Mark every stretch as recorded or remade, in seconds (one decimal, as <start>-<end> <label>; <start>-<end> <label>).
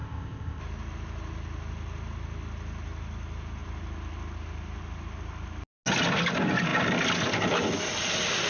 0.0-0.6 remade; 0.6-8.5 recorded